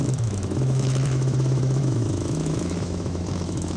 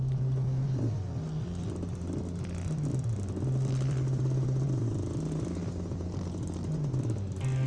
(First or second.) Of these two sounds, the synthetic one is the first